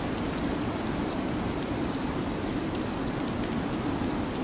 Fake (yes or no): no